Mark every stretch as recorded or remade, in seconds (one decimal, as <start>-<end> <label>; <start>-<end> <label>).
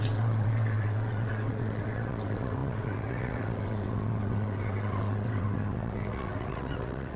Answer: 0.0-7.2 remade